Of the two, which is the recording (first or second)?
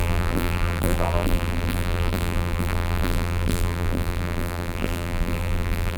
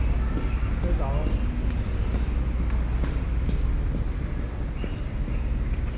second